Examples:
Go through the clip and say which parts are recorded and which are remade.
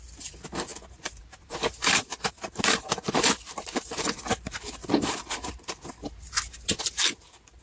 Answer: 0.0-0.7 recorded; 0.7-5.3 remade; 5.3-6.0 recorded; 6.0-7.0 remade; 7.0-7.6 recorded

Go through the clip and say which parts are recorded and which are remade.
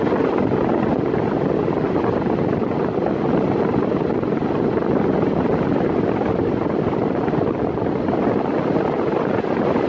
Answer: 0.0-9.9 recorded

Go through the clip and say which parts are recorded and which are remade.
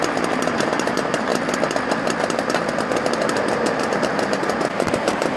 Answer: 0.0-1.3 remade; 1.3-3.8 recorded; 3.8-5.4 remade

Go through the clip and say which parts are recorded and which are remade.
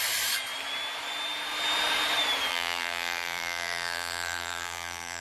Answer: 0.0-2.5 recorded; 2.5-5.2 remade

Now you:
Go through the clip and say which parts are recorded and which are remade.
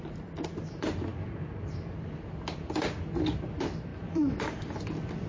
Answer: 0.0-3.9 recorded; 3.9-5.3 remade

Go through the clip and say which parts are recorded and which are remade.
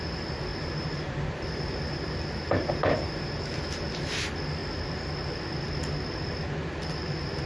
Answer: 0.0-0.5 recorded; 0.5-3.4 remade; 3.4-7.5 recorded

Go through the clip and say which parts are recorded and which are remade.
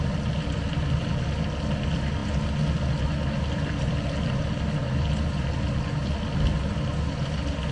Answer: 0.0-7.7 recorded